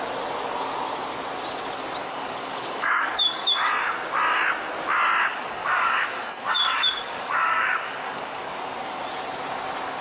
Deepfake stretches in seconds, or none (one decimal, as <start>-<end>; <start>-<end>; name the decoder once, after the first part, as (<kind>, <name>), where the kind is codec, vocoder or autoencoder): 2.0-3.7 (codec, DAC); 5.3-8.5